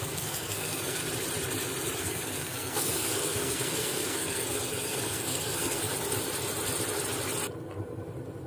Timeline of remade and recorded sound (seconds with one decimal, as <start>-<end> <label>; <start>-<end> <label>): 0.0-1.0 remade; 1.0-2.0 recorded; 2.0-5.9 remade; 5.9-8.5 recorded